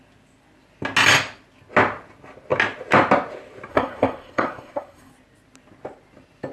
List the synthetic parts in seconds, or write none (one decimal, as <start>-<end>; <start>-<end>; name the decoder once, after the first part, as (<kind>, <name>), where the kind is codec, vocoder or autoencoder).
3.7-5.1 (codec, SNAC)